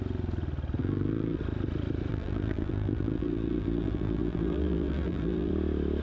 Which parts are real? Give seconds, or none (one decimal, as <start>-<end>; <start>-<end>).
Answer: 0.0-0.8; 1.4-2.1; 5.5-6.0